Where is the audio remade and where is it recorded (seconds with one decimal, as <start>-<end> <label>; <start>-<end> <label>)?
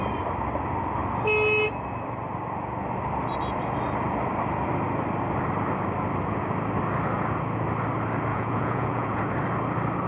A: 0.0-8.3 recorded; 8.3-9.2 remade; 9.2-10.1 recorded